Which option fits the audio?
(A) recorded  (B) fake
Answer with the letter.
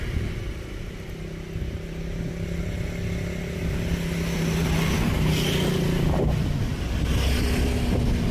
A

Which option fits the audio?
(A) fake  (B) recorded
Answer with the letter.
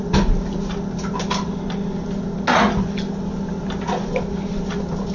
B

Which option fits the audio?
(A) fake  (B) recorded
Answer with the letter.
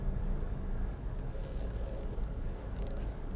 A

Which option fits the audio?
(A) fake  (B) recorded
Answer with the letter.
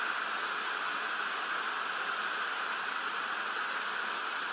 B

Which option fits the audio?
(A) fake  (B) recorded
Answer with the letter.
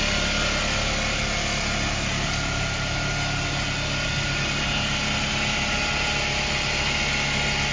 B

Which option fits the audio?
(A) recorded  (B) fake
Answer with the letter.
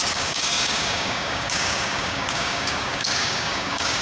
B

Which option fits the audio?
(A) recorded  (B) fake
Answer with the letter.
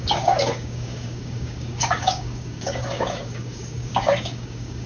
B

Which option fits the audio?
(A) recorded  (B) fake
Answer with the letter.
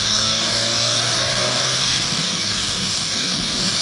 B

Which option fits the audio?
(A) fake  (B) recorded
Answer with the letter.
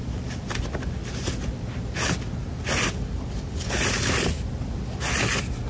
B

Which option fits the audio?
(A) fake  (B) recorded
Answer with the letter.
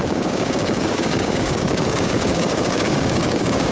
A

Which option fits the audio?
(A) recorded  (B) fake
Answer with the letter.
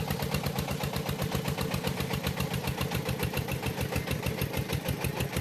A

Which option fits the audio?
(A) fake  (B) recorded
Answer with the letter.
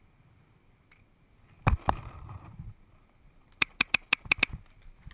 B